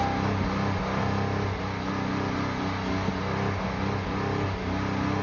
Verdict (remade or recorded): recorded